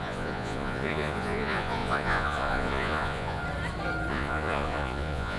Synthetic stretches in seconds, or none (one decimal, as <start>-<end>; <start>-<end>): 0.0-3.4; 4.1-5.4